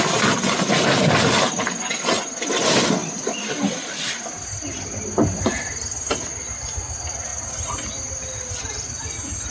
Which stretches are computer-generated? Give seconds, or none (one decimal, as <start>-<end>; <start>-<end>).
3.0-6.1; 7.3-8.1